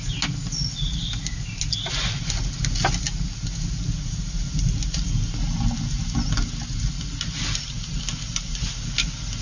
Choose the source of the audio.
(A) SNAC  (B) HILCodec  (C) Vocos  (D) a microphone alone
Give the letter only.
D